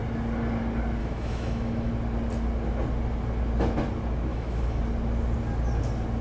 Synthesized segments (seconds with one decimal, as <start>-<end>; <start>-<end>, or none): 1.0-1.9; 4.3-4.8